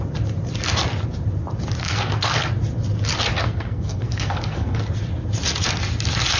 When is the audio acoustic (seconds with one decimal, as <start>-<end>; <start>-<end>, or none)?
0.0-1.8; 2.5-3.4; 4.8-6.4